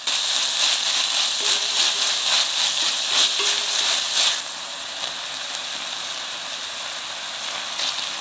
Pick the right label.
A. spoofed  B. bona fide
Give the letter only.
B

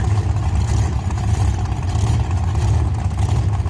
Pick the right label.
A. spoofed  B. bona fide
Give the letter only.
B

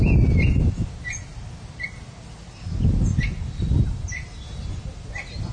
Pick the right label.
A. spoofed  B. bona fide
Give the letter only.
B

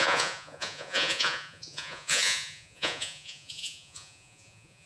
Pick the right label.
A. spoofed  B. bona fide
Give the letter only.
A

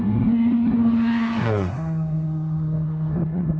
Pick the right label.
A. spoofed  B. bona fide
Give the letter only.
A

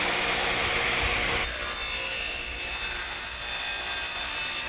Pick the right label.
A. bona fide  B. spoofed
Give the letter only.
A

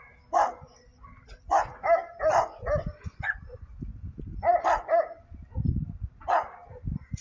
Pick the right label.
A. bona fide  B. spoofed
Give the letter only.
A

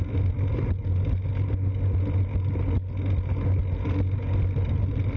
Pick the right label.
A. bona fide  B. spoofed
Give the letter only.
A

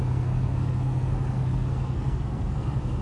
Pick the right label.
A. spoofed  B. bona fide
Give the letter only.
A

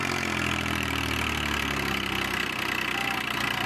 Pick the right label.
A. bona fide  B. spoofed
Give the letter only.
A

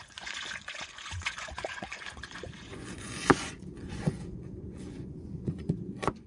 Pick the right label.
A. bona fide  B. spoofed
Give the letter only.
B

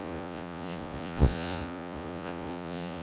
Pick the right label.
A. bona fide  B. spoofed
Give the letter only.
B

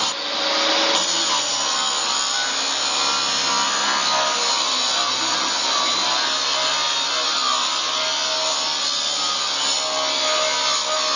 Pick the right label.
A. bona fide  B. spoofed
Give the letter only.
A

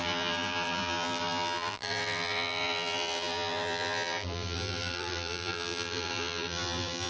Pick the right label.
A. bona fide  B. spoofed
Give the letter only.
B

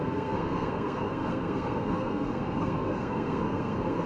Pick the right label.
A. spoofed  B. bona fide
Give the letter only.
A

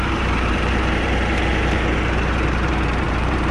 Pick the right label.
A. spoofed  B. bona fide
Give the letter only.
A